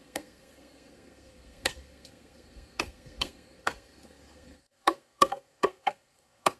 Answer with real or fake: fake